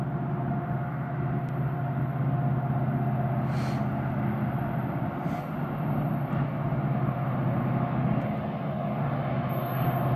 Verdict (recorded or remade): recorded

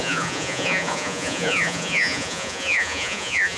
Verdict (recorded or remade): remade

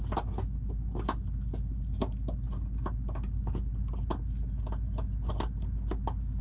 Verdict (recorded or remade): recorded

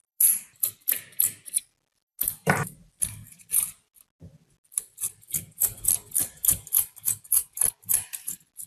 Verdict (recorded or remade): recorded